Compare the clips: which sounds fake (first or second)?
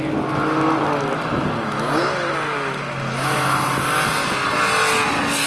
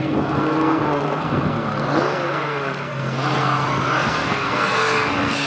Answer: second